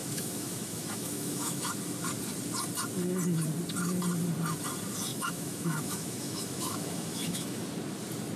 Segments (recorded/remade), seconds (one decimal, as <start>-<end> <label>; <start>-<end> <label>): 0.0-1.7 remade; 1.7-5.1 recorded; 5.1-7.6 remade; 7.6-8.4 recorded